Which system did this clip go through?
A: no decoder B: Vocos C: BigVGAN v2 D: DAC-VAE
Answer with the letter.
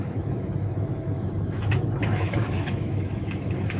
D